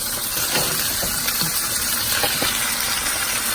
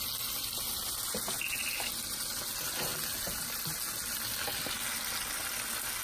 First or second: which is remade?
first